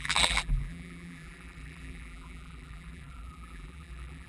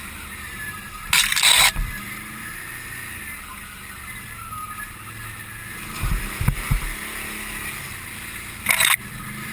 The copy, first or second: first